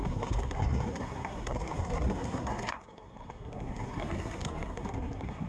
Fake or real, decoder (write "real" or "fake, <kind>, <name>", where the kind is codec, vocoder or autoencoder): fake, codec, SNAC